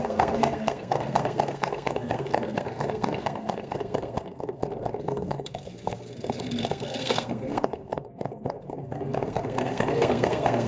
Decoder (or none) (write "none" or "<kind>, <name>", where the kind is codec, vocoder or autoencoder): codec, SNAC